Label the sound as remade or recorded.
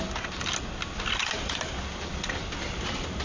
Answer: recorded